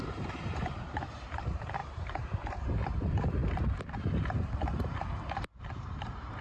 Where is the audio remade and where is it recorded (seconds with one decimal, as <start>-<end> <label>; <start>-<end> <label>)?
0.0-6.4 remade